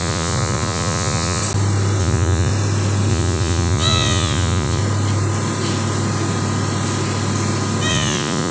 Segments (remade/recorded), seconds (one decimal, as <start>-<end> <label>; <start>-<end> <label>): 0.0-1.4 remade; 1.4-2.0 recorded; 2.0-2.5 remade; 2.5-3.1 recorded; 3.1-4.8 remade; 4.8-7.9 recorded; 7.9-8.5 remade